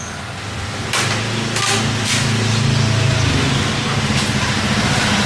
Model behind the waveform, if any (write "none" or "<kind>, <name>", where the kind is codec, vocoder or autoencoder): none